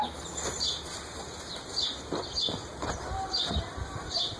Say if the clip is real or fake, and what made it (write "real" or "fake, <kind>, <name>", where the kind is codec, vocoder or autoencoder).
real